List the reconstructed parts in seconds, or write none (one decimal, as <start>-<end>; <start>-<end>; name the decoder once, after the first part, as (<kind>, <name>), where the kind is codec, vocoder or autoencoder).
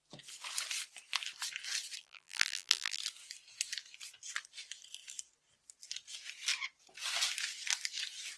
2.0-3.0 (vocoder, BigVGAN v2)